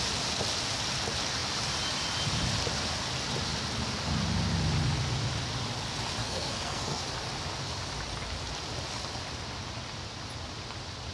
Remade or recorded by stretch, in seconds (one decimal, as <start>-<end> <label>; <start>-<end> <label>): 0.0-6.2 recorded; 6.2-7.0 remade; 7.0-11.1 recorded